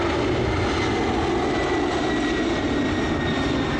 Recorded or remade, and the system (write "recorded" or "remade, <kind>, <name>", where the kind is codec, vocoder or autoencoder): recorded